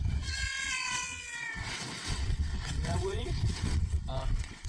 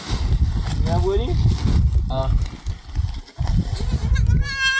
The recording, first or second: second